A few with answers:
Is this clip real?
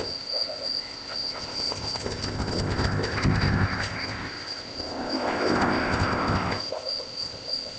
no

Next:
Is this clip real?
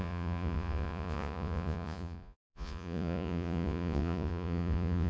no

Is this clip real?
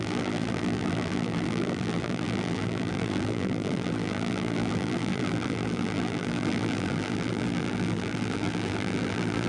no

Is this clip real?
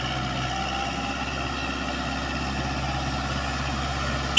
yes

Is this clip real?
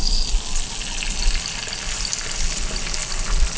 yes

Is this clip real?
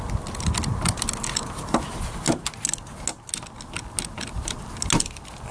yes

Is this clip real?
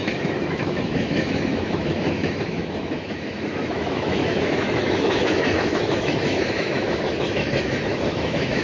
no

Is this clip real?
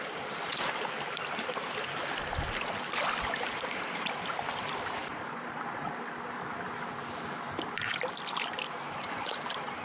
yes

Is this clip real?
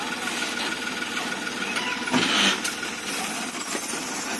yes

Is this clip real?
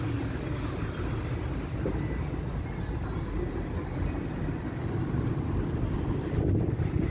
yes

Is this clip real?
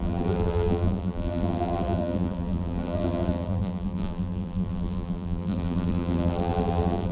no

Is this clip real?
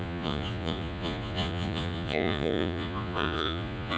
no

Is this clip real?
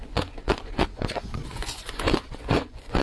no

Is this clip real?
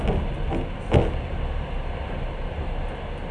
yes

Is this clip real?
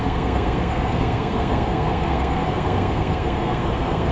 no